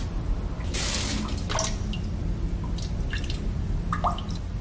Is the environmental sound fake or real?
real